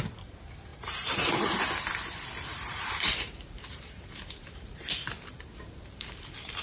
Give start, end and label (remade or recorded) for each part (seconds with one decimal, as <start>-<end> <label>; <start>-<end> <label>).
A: 0.0-0.7 recorded; 0.7-1.3 remade; 1.3-2.5 recorded; 2.5-6.6 remade